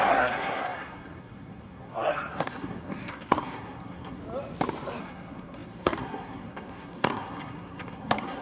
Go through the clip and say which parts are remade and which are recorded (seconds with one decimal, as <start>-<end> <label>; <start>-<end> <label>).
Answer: 0.0-4.2 remade; 4.2-5.0 recorded; 5.0-8.4 remade